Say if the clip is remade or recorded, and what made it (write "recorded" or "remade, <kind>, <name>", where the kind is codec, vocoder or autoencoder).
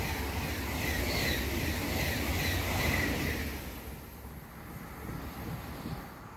recorded